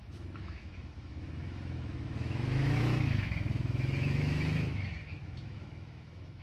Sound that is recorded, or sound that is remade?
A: remade